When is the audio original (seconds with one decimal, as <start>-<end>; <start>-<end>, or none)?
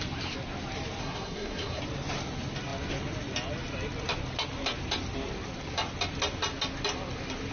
0.0-1.0; 1.8-7.5